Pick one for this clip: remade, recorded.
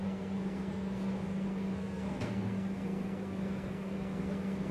remade